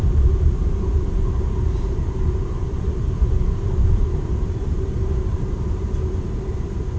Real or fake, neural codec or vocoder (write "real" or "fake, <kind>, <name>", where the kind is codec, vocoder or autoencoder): fake, vocoder, BigVGAN v2